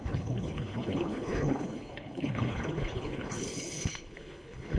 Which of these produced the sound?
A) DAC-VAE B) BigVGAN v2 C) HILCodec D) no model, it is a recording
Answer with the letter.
C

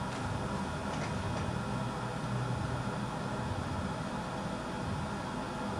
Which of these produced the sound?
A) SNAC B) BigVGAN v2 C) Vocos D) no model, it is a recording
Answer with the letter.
D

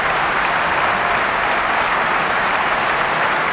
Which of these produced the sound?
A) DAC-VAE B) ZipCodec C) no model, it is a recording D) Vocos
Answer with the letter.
C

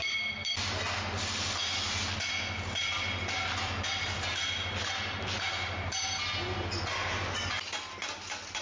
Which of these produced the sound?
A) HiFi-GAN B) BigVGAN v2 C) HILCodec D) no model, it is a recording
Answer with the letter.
D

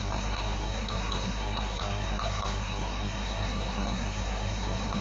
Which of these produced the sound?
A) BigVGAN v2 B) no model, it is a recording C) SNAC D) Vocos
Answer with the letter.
C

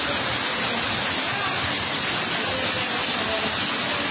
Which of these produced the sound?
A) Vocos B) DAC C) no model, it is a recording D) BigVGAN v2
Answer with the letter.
C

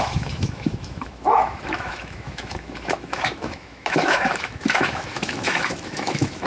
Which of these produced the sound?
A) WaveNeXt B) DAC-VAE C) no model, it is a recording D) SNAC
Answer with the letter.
B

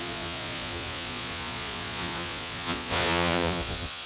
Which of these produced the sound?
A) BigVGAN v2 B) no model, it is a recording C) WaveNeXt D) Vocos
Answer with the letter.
D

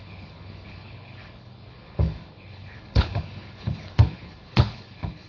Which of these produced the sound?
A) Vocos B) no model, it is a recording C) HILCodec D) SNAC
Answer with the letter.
C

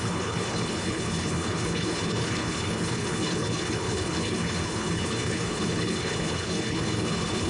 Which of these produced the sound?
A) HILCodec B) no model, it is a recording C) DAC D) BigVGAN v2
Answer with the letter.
A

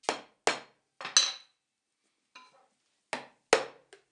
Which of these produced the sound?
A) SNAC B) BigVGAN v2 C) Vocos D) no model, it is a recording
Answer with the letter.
D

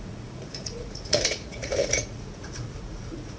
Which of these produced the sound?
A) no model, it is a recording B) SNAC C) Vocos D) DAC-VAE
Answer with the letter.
C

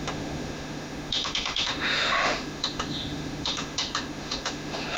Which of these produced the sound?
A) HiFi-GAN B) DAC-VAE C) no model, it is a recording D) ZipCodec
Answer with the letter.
B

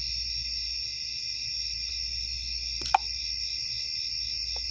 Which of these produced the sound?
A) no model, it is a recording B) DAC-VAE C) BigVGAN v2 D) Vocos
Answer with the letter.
A